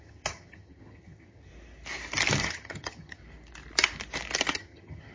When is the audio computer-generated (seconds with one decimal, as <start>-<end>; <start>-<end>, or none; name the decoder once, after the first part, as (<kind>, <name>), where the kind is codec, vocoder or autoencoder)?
0.0-1.5 (vocoder, HiFi-GAN); 2.4-3.2; 4.5-5.1